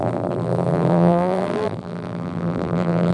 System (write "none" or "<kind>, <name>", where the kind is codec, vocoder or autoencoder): vocoder, BigVGAN v2